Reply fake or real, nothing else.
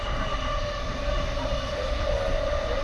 real